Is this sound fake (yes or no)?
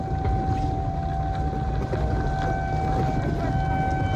no